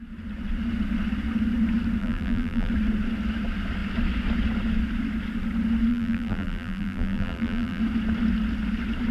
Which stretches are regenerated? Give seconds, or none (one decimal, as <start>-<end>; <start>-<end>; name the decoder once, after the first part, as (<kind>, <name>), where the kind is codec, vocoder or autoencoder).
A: 2.0-2.7 (vocoder, BigVGAN v2); 5.9-7.8